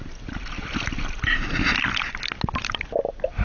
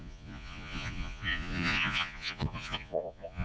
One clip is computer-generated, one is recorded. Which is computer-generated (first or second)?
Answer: second